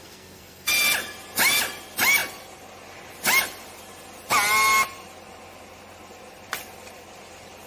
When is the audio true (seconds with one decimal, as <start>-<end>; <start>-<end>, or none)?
0.7-7.7